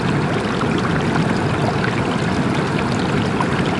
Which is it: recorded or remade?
recorded